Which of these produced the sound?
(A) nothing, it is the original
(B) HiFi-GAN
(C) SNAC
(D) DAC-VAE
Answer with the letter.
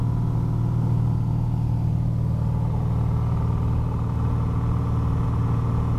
A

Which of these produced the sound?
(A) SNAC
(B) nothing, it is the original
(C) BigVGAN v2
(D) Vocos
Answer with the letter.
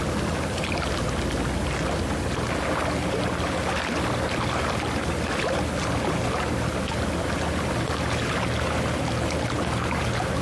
B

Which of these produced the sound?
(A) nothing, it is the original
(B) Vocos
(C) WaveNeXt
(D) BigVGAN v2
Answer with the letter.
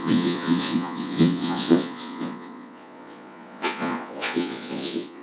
B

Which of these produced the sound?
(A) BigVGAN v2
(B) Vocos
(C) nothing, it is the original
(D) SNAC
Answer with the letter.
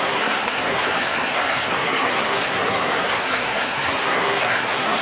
D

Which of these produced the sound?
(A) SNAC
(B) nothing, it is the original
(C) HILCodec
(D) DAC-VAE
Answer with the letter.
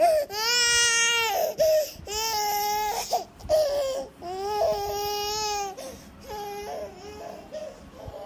B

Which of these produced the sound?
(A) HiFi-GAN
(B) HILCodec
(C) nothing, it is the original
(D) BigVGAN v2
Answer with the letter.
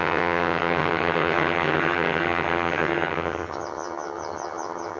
A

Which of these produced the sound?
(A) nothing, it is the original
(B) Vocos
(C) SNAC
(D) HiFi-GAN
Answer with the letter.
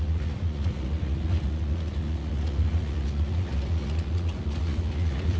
B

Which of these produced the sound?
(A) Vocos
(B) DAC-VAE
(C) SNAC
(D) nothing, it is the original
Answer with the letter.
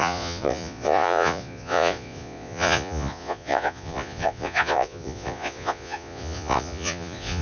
A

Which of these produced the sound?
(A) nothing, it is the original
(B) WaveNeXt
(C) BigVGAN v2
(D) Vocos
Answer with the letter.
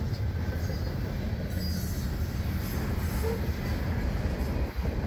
A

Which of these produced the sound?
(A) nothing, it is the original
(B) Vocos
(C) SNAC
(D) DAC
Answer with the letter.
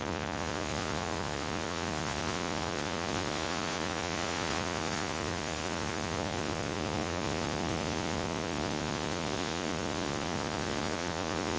B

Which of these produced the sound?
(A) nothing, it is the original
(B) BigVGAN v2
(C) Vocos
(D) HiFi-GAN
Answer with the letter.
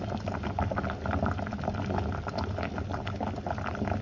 A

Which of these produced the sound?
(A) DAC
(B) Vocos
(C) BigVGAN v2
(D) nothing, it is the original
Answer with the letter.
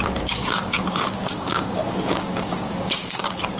A